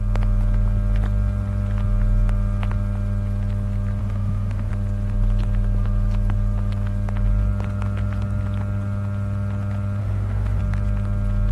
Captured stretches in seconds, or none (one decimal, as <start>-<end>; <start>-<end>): 0.0-4.0; 4.7-10.0; 10.6-11.5